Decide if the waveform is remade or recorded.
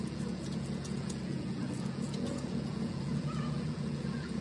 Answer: remade